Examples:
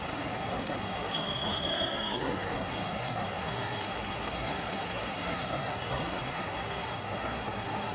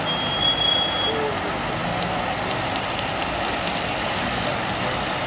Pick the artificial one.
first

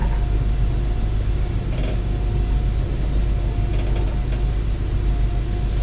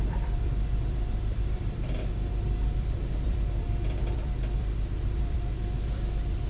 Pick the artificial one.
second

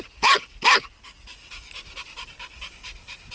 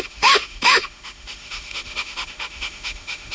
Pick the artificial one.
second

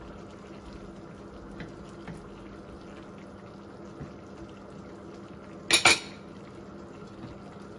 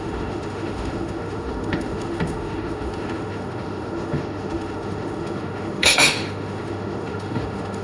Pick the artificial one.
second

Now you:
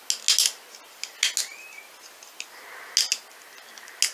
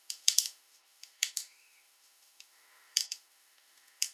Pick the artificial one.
second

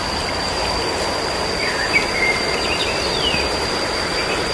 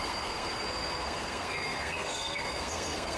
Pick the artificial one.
second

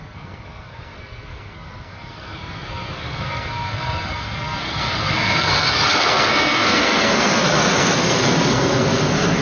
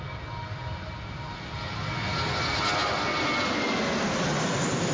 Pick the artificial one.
first